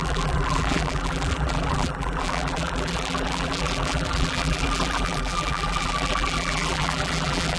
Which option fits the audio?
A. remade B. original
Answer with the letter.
A